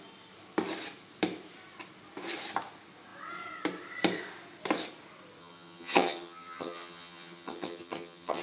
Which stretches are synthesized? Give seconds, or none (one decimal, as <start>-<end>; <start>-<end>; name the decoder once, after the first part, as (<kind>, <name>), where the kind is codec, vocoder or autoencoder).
5.4-8.4 (vocoder, HiFi-GAN)